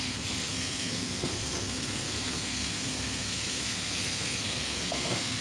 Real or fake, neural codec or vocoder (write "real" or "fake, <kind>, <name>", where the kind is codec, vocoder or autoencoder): fake, codec, SNAC